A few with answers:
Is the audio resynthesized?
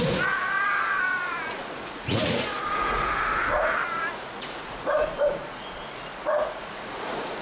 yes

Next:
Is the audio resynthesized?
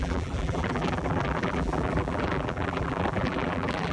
yes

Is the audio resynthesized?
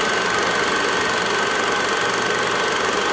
no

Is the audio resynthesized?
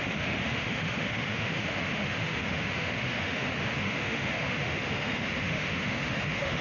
yes